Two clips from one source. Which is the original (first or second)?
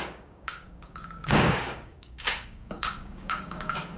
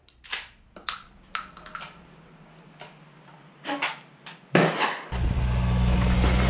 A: second